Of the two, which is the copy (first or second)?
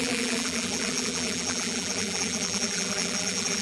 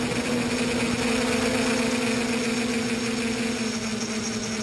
first